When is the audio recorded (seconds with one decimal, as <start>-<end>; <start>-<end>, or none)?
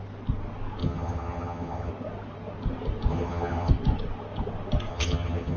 0.0-0.8; 1.9-3.1; 3.7-4.9